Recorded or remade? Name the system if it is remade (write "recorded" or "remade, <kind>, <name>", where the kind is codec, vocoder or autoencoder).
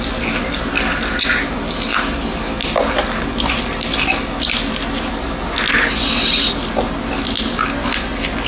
recorded